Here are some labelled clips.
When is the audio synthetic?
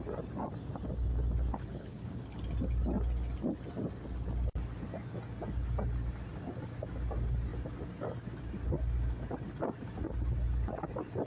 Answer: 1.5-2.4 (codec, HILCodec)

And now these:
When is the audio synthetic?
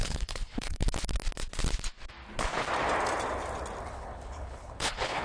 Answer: 0.0-0.8 (codec, HILCodec); 3.9-5.2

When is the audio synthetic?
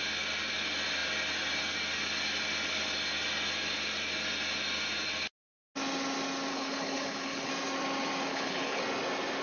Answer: 6.5-7.5 (codec, HILCodec); 8.3-8.8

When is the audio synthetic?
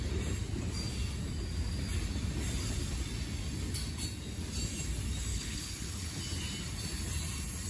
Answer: 5.3-6.2 (codec, HILCodec)